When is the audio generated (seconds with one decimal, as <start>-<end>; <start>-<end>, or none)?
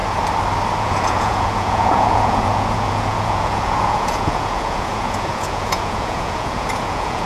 0.8-7.3